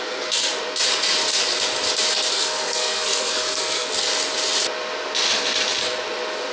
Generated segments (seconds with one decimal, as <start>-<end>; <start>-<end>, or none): 0.0-0.5; 2.3-3.9